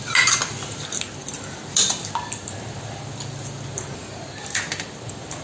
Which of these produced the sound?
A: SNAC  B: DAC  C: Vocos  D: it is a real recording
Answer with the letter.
D